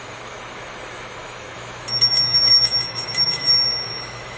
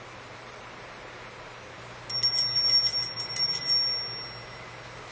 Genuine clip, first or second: second